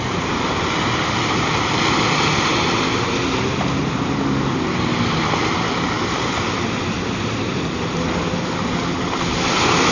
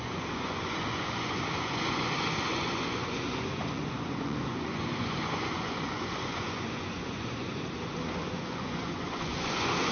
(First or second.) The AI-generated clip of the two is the second